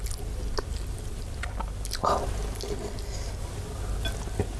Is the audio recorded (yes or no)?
yes